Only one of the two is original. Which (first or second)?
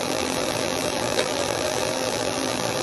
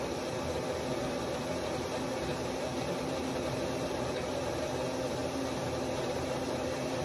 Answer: second